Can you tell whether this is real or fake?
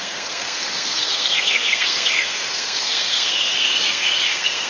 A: fake